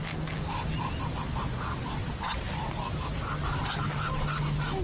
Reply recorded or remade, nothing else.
recorded